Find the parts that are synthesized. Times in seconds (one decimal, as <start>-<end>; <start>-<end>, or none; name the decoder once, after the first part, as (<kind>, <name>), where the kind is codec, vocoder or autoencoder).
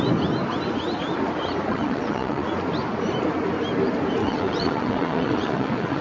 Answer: 1.7-2.5 (vocoder, WaveNeXt); 4.2-6.0